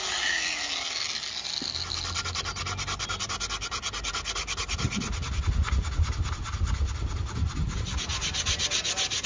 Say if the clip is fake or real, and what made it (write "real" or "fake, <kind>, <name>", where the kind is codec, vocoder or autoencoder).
real